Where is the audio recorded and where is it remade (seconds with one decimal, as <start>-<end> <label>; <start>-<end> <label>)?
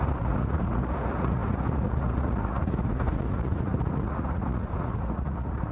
0.0-5.7 remade